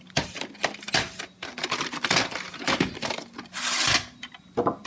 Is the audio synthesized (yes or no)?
no